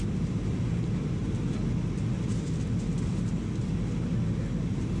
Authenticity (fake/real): real